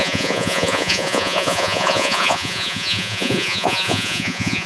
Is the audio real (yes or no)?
no